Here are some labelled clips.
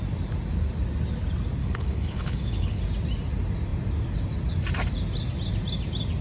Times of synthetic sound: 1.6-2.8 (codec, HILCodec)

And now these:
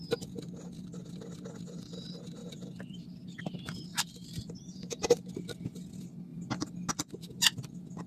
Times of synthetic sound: 2.4-3.4 (vocoder, BigVGAN v2); 3.9-5.2